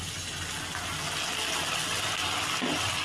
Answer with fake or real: real